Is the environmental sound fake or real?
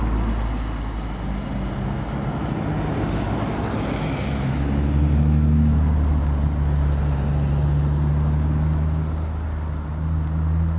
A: real